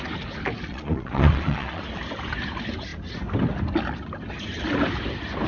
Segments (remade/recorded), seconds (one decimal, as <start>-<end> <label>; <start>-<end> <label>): 0.0-0.7 recorded; 0.7-1.8 remade; 1.8-5.5 recorded